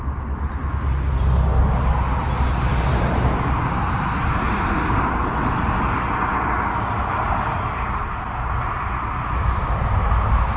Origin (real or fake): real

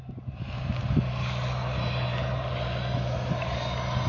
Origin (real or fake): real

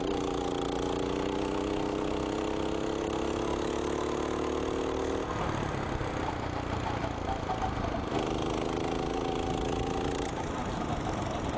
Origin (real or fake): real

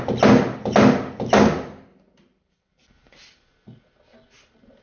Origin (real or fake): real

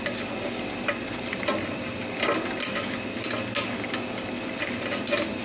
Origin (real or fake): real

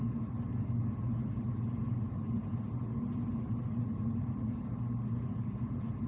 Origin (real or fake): real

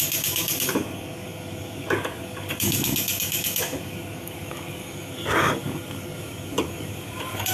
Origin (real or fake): fake